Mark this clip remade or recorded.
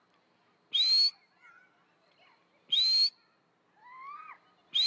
recorded